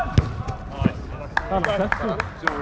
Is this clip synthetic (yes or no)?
no